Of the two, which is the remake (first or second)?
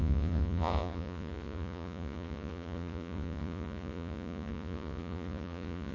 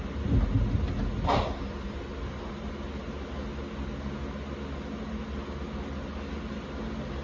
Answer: first